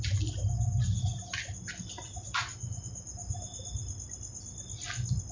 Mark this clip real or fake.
real